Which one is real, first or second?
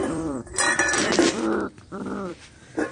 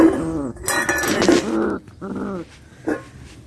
second